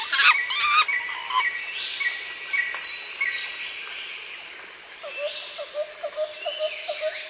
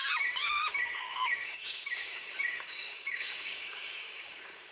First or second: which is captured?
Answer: first